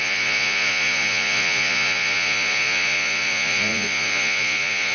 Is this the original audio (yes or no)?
no